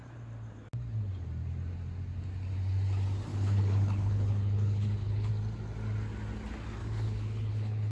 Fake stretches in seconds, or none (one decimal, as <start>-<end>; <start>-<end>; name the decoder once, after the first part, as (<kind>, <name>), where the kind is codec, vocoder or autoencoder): 3.3-5.3 (codec, HILCodec); 6.8-7.9